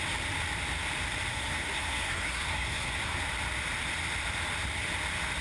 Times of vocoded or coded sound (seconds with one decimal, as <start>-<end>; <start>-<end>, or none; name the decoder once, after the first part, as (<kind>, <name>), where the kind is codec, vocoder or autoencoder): 1.3-3.2 (codec, SNAC)